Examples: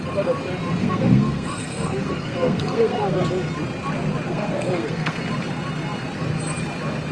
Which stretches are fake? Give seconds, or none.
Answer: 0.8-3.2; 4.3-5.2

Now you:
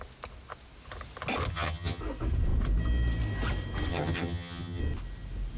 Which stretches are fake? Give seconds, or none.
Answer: 1.5-2.0; 3.9-4.8

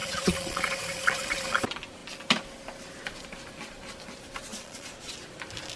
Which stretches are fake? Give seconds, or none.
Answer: 0.0-1.6; 4.5-5.1